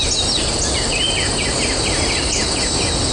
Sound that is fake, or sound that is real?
real